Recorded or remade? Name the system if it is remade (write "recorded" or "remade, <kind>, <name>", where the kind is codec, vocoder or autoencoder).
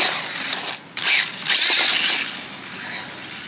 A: recorded